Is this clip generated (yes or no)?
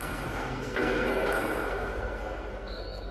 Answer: yes